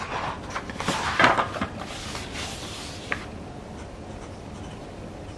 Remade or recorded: recorded